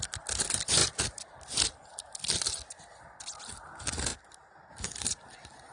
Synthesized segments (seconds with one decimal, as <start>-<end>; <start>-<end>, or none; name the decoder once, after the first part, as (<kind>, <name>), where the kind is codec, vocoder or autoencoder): none